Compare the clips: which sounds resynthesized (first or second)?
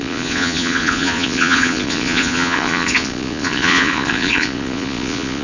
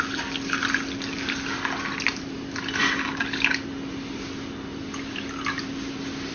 first